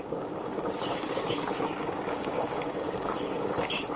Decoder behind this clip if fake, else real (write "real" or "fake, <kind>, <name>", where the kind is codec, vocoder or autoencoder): fake, codec, DAC